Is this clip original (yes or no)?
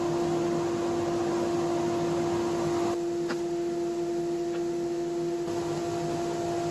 yes